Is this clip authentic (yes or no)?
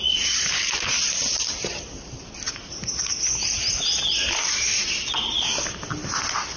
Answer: yes